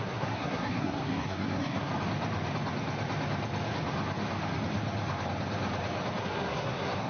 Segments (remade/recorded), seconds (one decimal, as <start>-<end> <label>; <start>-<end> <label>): 0.0-1.9 remade; 1.9-6.2 recorded; 6.2-7.1 remade

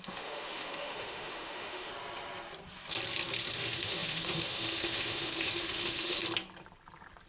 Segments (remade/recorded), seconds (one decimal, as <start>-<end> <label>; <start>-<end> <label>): 0.0-1.9 remade; 1.9-3.5 recorded; 3.5-6.2 remade; 6.2-7.3 recorded

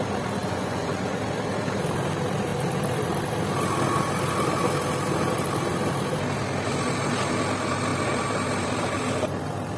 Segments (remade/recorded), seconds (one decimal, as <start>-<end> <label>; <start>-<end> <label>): 0.0-0.4 recorded; 0.4-1.2 remade; 1.2-9.8 recorded

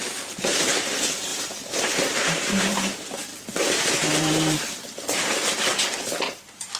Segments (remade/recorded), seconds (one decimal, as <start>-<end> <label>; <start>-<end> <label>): 0.0-3.3 remade; 3.3-3.9 recorded; 3.9-5.7 remade; 5.7-6.2 recorded; 6.2-6.8 remade

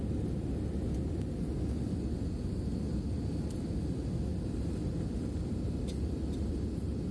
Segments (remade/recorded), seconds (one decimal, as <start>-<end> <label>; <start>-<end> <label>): 0.0-7.1 recorded